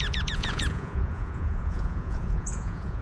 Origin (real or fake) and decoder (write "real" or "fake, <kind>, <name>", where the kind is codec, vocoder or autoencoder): fake, vocoder, Vocos